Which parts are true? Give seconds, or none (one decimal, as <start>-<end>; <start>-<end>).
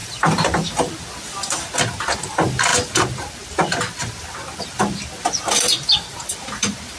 0.9-7.0